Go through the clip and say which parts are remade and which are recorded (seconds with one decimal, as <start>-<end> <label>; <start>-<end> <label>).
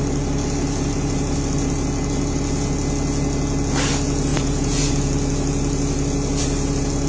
0.0-4.3 recorded; 4.3-4.9 remade; 4.9-7.1 recorded